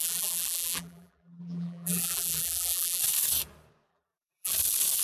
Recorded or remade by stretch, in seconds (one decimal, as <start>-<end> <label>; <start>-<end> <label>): 0.0-3.0 remade; 3.0-3.9 recorded; 3.9-4.5 remade; 4.5-5.0 recorded